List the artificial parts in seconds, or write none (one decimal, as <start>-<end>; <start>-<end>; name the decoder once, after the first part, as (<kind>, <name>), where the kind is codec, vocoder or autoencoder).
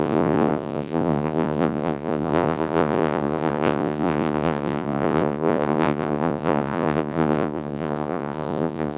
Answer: 0.0-9.0 (vocoder, Vocos)